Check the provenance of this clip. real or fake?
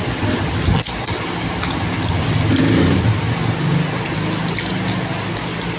real